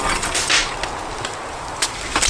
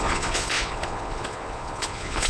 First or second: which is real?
first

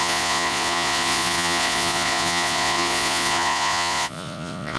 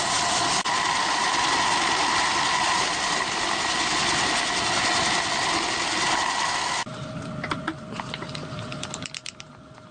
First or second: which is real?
second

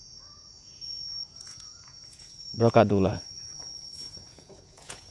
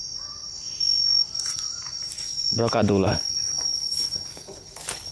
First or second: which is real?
second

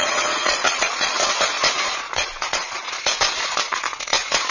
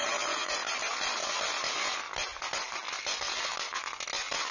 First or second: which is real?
second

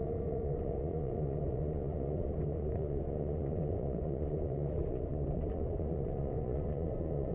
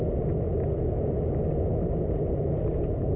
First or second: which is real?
second